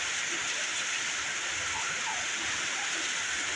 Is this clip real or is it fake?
real